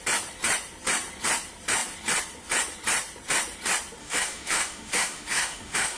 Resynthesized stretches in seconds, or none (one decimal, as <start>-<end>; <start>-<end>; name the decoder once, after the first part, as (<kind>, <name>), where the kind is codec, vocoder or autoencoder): 4.0-6.0 (autoencoder, DAC-VAE)